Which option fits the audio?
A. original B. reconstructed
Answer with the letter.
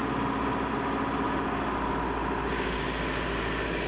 A